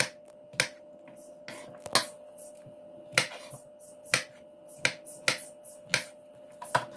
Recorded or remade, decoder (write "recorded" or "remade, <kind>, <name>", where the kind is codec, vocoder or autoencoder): recorded